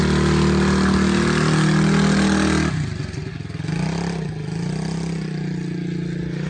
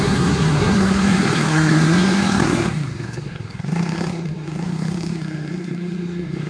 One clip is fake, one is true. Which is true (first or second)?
first